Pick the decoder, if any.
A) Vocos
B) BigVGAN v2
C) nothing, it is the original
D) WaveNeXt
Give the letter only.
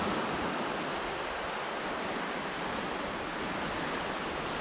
C